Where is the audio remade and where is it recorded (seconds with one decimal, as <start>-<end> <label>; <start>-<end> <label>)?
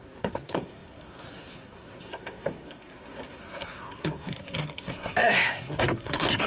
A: 0.0-6.5 remade